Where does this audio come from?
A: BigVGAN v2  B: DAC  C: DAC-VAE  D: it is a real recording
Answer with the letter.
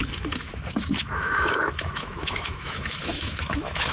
C